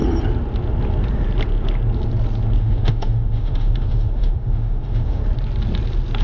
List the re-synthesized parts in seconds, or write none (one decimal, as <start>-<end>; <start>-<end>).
2.6-5.2